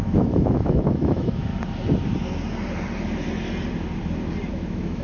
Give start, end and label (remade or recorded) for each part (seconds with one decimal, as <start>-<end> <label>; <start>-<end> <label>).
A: 0.0-1.5 remade; 1.5-4.5 recorded; 4.5-5.0 remade